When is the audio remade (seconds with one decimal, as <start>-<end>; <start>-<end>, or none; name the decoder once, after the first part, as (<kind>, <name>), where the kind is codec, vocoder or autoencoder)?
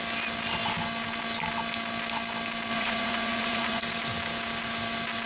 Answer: 2.7-3.8 (vocoder, Vocos)